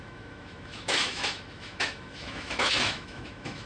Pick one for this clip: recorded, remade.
remade